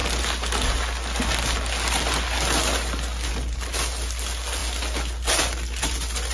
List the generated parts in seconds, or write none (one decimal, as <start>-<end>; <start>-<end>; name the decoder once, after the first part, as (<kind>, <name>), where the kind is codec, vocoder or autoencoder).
none